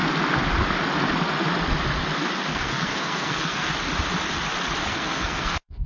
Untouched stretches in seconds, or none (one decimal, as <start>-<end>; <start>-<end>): 0.0-2.5; 3.7-4.8